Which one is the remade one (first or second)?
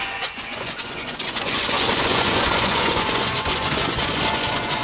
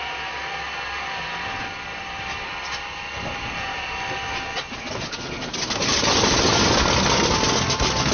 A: first